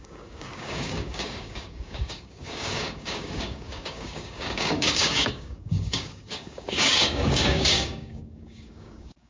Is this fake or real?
fake